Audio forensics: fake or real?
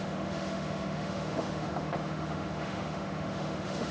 fake